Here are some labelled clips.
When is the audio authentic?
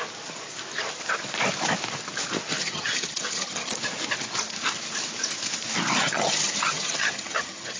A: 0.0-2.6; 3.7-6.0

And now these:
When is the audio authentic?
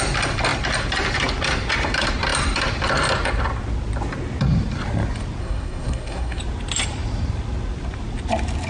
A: 0.0-5.4; 6.4-8.7